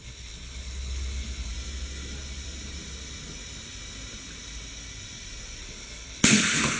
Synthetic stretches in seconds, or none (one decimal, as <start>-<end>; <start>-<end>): 0.0-1.5; 5.6-6.8